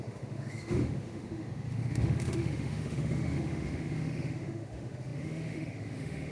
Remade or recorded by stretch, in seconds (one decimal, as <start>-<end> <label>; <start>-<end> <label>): 0.0-6.3 remade